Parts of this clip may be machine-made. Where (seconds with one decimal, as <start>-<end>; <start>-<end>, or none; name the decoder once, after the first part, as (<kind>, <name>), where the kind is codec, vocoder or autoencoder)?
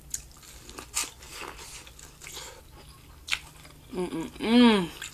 none